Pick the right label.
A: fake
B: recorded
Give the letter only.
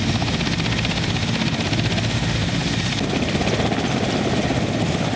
B